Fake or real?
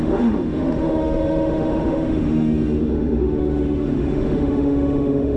fake